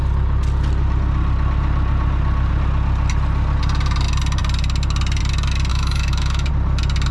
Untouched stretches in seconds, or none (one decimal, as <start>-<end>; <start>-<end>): 0.0-5.7; 6.5-7.1